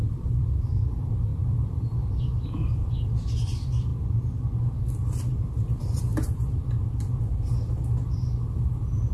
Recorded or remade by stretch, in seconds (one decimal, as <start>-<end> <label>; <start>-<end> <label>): 0.0-3.9 remade; 3.9-5.3 recorded; 5.3-9.1 remade